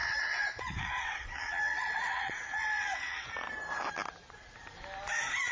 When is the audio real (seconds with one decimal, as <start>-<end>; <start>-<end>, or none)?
3.3-5.5